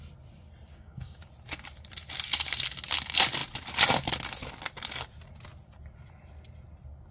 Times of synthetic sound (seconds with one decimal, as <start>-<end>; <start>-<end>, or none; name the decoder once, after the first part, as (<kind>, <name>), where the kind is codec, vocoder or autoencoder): 0.7-1.2 (codec, DAC)